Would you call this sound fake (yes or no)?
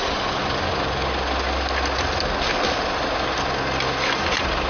no